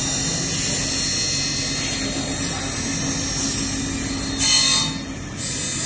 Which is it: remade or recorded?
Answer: recorded